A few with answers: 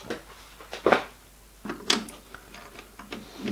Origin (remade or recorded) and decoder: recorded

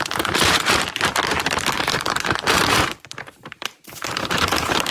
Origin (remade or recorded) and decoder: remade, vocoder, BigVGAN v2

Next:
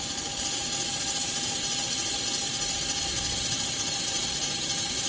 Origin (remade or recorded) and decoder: remade, vocoder, BigVGAN v2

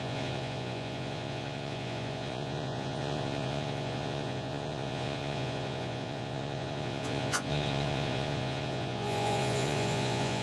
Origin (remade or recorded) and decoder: remade, vocoder, Vocos